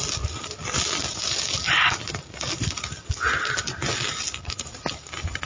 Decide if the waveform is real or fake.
real